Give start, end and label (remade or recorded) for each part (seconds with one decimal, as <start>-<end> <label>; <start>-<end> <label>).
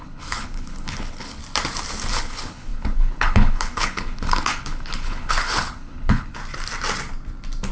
0.0-1.4 remade; 1.4-2.1 recorded; 2.1-6.4 remade; 6.4-7.7 recorded